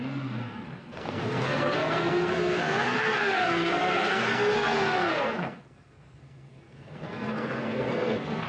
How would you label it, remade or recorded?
remade